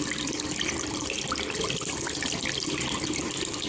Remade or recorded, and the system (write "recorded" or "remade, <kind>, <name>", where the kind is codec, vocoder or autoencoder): recorded